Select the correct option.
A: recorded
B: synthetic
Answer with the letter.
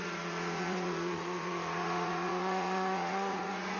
B